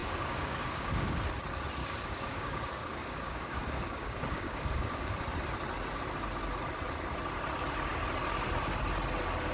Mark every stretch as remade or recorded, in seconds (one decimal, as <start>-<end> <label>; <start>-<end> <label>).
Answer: 0.0-1.1 remade; 1.1-1.8 recorded; 1.8-5.1 remade; 5.1-9.5 recorded